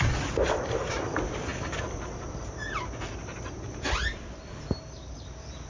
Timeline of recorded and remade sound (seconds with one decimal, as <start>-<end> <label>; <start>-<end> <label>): 0.0-5.7 recorded